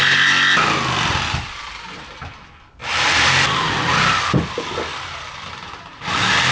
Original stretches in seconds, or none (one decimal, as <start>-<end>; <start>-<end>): 0.0-2.8; 5.5-6.5